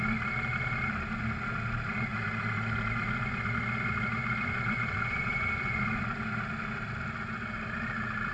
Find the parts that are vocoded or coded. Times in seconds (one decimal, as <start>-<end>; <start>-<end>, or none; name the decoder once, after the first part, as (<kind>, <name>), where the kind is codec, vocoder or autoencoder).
2.1-6.0 (vocoder, Vocos)